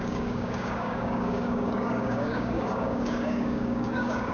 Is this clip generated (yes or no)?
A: yes